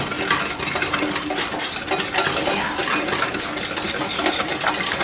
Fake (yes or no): no